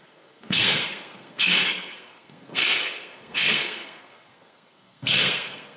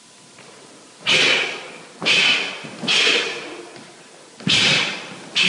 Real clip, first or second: second